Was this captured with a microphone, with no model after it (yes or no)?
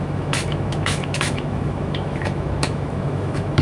no